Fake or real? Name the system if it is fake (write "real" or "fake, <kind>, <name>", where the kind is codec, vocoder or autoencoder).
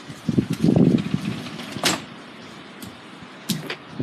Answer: real